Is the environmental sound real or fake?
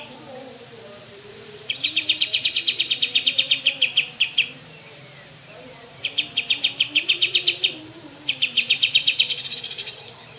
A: fake